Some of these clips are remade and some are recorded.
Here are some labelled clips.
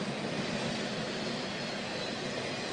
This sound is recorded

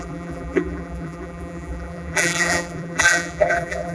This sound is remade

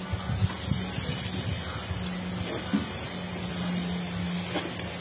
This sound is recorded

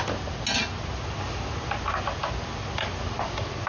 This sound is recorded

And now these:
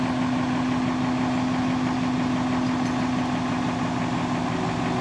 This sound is recorded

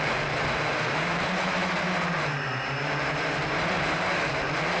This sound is remade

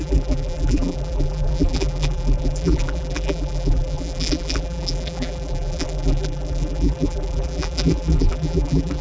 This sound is remade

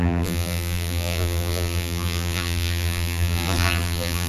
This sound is remade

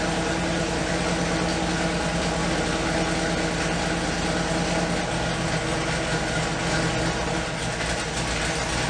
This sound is recorded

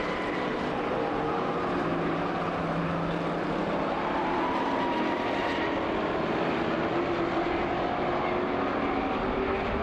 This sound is recorded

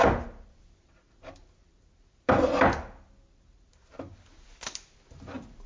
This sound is recorded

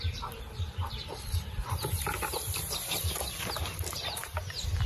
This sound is remade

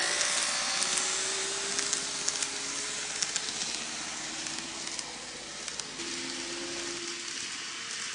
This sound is recorded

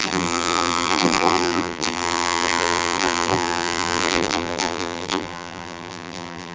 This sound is remade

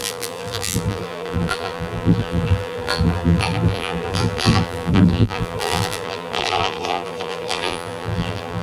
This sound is remade